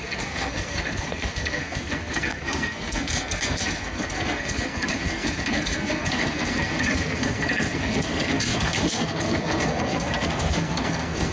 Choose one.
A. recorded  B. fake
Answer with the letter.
B